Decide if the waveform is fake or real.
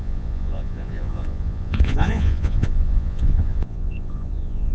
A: fake